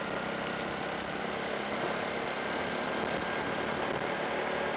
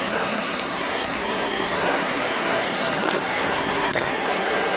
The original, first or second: first